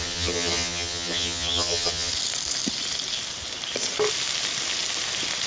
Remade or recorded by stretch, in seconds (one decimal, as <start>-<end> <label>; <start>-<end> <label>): 0.0-2.1 remade; 2.1-5.5 recorded